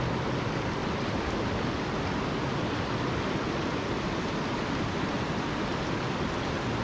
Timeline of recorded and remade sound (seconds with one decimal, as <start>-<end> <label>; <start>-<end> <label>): 0.0-6.8 recorded